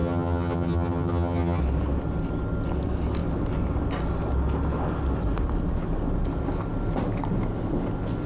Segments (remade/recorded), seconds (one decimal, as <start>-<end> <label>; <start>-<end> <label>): 0.0-1.6 remade; 1.6-8.3 recorded